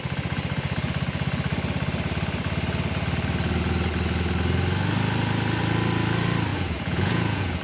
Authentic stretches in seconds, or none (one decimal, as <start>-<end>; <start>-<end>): 0.0-6.5